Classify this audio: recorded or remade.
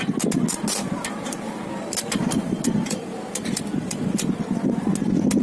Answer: recorded